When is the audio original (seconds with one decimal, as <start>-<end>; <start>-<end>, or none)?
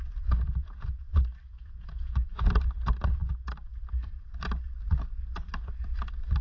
0.0-0.6; 1.1-1.5; 2.4-6.4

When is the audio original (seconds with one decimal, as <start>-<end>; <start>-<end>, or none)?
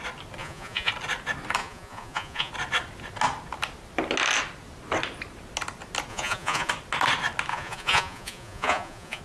0.0-0.4; 0.9-1.6; 2.5-6.1; 6.7-7.5